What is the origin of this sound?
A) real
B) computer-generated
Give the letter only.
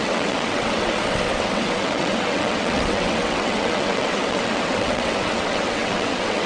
B